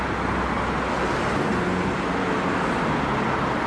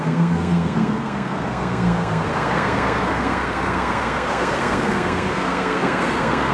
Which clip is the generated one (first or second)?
second